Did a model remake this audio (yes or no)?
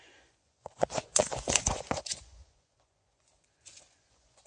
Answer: yes